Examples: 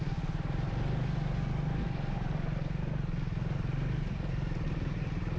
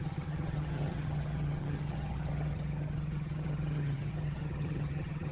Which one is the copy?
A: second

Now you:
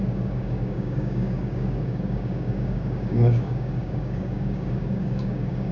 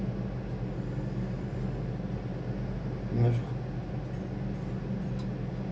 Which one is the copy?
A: first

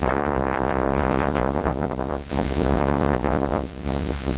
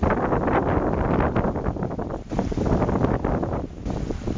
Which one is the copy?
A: first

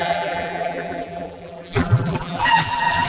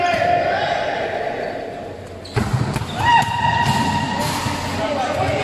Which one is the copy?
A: first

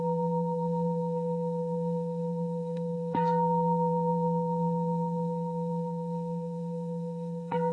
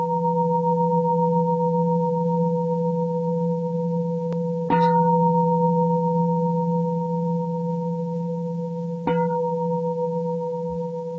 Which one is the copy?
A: first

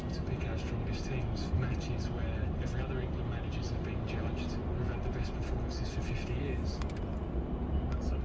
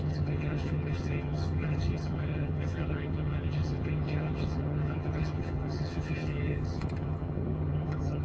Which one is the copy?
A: second